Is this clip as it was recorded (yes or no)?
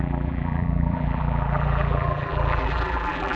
no